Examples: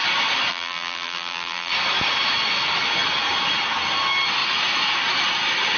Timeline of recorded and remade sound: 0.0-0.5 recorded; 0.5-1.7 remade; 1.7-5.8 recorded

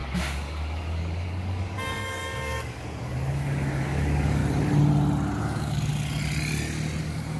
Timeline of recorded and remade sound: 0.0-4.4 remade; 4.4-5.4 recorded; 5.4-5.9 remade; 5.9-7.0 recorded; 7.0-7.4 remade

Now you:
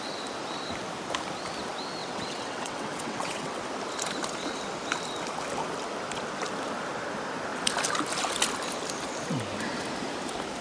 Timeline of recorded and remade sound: 0.0-2.0 recorded; 2.0-3.6 remade; 3.6-10.6 recorded

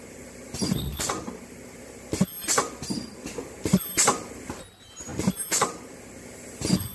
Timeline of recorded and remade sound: 0.0-6.9 recorded

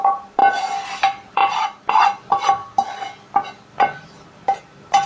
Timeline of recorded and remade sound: 0.0-1.4 remade; 1.4-1.9 recorded; 1.9-2.6 remade; 2.6-4.0 recorded; 4.0-5.1 remade

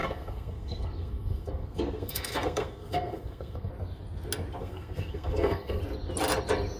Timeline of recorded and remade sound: 0.0-3.7 remade; 3.7-4.6 recorded; 4.6-5.8 remade; 5.8-6.8 recorded